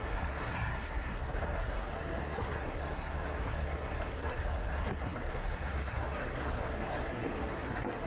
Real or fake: fake